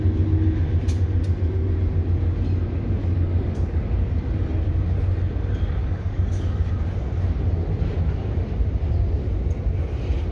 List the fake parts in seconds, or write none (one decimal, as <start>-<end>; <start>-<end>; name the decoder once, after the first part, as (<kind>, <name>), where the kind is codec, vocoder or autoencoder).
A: 3.0-3.8 (codec, DAC); 5.8-6.7